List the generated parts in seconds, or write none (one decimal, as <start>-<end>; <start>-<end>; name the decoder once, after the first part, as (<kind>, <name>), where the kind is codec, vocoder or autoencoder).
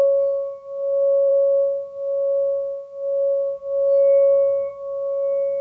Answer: 0.0-5.6 (codec, SNAC)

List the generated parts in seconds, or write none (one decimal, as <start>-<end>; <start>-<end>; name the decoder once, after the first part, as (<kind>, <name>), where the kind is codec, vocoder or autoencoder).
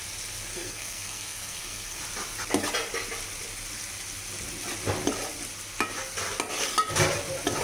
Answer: 0.5-2.0 (codec, SNAC)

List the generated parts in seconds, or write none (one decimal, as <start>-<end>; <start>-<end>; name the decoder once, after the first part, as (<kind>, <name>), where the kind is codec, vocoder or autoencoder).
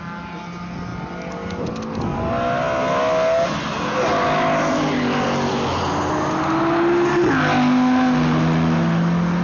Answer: none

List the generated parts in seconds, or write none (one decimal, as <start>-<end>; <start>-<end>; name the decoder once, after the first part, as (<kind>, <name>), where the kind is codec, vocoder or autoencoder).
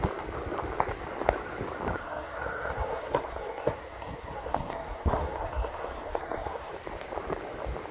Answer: 2.0-6.7 (codec, SNAC)